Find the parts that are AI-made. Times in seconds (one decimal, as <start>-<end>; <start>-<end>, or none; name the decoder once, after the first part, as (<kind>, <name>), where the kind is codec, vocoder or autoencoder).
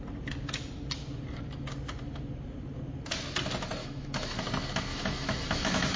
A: 3.8-4.4 (autoencoder, DAC-VAE); 4.9-6.0